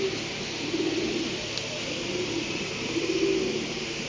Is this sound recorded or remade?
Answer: recorded